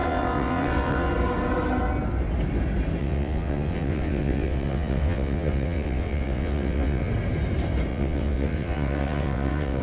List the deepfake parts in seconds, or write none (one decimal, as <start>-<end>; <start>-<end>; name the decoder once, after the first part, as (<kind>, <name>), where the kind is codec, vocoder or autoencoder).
0.0-1.1 (vocoder, WaveNeXt); 3.0-7.1; 7.9-9.8